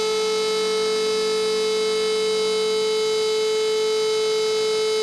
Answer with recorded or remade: recorded